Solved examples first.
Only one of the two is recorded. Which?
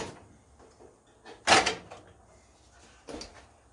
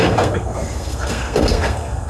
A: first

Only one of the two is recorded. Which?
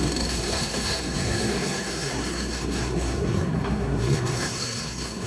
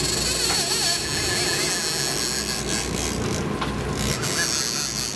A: second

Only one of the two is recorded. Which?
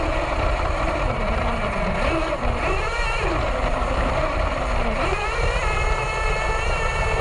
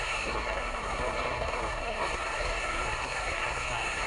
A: first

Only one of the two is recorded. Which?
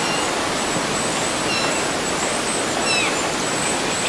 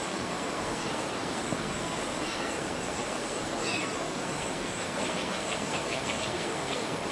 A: first